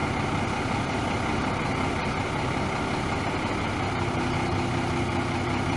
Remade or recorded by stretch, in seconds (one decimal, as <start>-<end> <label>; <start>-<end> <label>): 0.0-5.8 recorded